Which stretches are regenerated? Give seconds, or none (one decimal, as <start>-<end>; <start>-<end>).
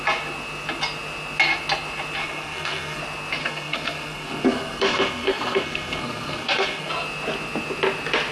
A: 2.2-3.0; 3.4-6.9